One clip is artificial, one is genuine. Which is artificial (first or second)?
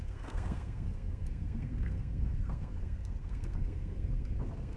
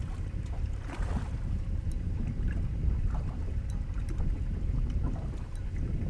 first